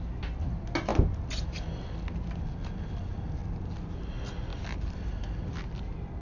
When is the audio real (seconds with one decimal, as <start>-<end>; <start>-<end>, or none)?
0.0-3.4; 3.9-4.5; 5.2-6.2